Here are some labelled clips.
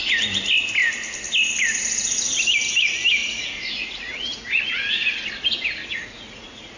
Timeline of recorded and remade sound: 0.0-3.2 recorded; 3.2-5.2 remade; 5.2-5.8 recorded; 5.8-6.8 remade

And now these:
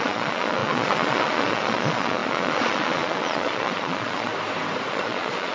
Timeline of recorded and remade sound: 0.0-4.3 remade; 4.3-4.9 recorded; 4.9-5.5 remade